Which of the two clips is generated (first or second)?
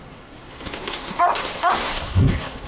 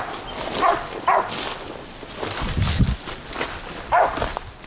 first